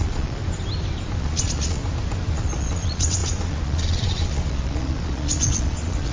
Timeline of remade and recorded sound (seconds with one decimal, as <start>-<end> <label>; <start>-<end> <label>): 0.0-0.4 remade; 0.4-1.2 recorded; 1.2-1.8 remade; 1.8-2.3 recorded; 2.3-6.1 remade

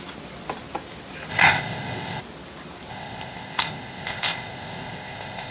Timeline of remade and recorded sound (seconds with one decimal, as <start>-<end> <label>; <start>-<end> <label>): 0.0-1.3 recorded; 1.3-2.2 remade; 2.2-2.9 recorded; 2.9-5.5 remade

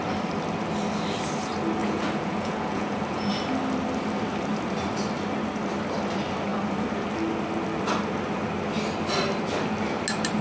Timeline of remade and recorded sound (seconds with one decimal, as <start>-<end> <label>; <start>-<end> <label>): 0.0-1.8 recorded; 1.8-3.3 remade; 3.3-10.4 recorded